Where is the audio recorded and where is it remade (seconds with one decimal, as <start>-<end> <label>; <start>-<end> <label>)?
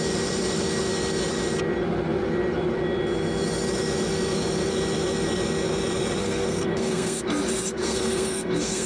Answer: 0.0-6.2 recorded; 6.2-7.2 remade; 7.2-7.8 recorded; 7.8-8.9 remade